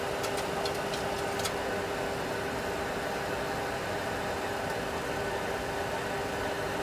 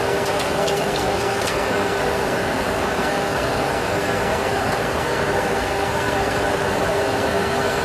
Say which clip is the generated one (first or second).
second